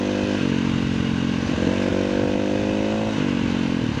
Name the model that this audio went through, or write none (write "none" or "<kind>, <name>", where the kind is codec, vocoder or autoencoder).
none